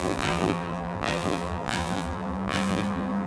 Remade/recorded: remade